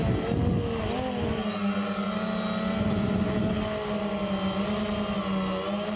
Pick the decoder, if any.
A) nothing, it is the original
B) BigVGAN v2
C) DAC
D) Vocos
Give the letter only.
A